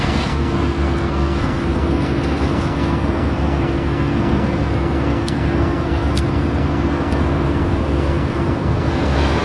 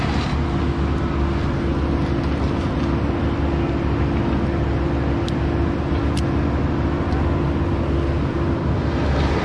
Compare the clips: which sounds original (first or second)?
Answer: second